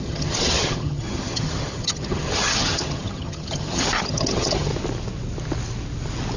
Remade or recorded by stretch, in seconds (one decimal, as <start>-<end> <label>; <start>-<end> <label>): 0.0-4.7 remade; 4.7-6.4 recorded